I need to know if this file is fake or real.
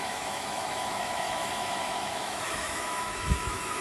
fake